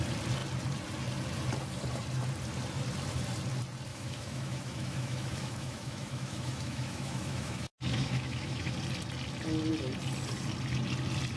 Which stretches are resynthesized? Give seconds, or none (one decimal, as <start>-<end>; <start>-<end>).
3.9-8.7

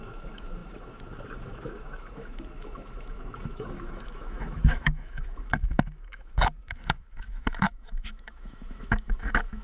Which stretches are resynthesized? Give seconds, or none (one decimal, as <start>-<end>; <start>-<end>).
0.0-9.6

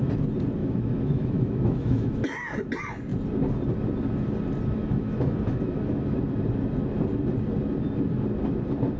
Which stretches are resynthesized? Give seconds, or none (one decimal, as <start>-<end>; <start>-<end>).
0.6-2.2; 4.8-6.2

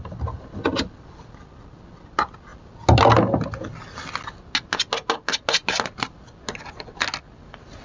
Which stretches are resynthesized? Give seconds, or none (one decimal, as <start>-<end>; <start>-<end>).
none